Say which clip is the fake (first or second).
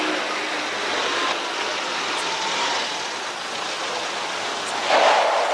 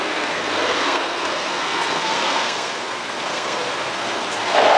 second